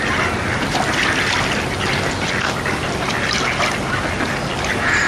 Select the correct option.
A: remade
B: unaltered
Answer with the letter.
B